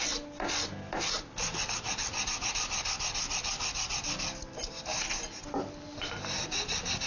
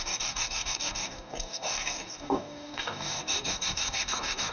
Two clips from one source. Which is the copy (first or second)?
second